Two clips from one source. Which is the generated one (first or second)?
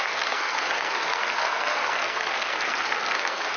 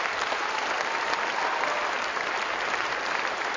first